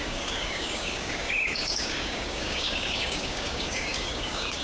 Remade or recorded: remade